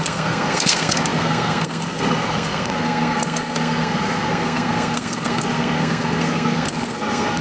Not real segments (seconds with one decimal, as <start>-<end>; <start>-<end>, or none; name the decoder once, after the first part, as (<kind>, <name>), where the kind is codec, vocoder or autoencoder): 0.0-7.4 (codec, SNAC)